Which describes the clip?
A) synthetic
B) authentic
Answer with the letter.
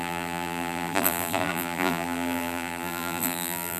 A